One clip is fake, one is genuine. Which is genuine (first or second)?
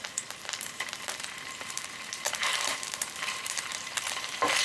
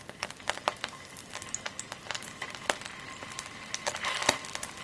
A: second